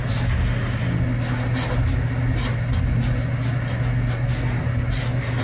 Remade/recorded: recorded